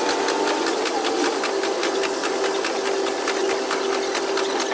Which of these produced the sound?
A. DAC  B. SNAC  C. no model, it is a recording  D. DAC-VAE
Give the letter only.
C